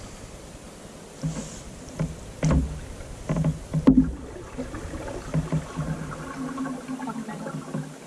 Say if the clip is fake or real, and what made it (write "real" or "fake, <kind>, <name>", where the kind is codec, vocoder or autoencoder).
real